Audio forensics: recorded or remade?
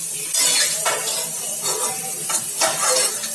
recorded